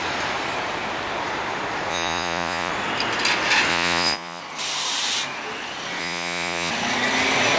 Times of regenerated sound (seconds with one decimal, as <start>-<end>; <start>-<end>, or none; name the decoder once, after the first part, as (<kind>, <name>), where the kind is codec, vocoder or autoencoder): 1.9-2.7 (vocoder, Vocos); 3.7-4.4; 6.0-6.7